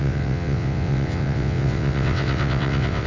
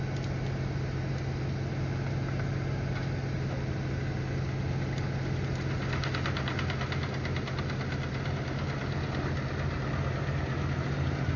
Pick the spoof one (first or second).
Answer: first